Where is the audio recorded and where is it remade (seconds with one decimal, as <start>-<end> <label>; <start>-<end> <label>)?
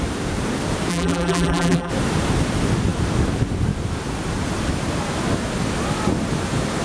0.0-0.9 recorded; 0.9-1.9 remade; 1.9-6.8 recorded